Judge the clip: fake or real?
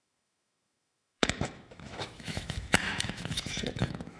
fake